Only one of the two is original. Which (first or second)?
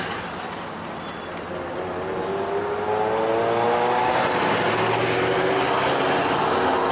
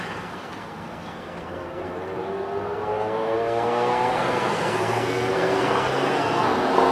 first